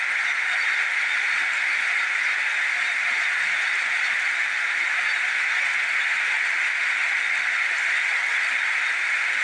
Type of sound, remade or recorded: recorded